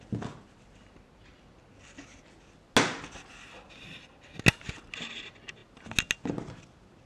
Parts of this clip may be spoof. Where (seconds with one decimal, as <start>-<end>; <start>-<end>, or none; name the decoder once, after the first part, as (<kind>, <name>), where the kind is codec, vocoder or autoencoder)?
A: none